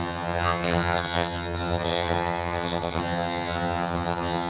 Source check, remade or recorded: remade